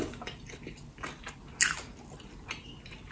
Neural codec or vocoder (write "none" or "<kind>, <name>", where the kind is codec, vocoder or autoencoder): none